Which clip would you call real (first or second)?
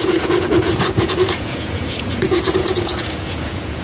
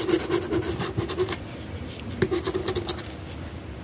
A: second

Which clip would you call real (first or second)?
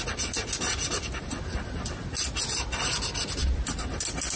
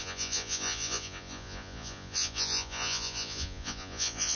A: first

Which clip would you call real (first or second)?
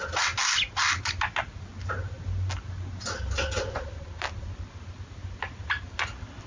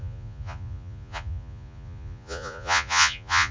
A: first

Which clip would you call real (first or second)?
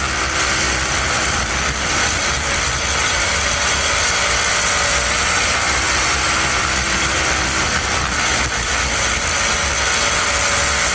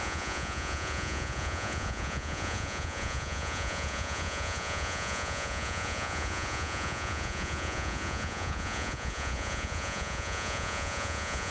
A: first